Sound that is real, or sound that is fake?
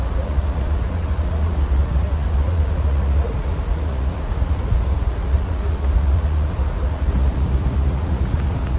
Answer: fake